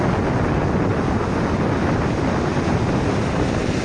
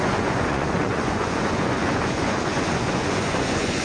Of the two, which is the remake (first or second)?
second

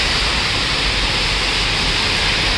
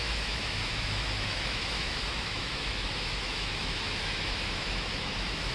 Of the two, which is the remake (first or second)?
second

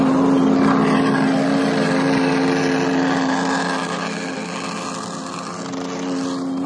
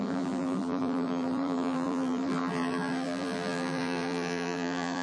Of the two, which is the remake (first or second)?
second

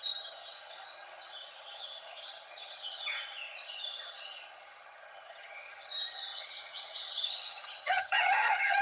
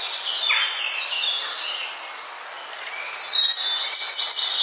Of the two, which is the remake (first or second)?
first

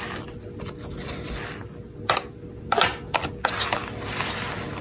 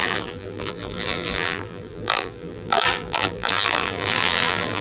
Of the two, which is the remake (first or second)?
second